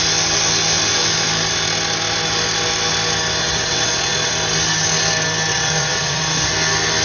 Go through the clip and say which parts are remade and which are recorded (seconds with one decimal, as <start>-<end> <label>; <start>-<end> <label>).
0.0-3.4 recorded; 3.4-4.3 remade; 4.3-5.5 recorded; 5.5-6.5 remade; 6.5-7.0 recorded